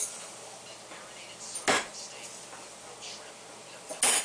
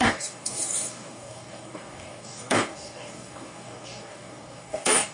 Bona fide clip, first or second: first